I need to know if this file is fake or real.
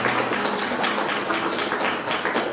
real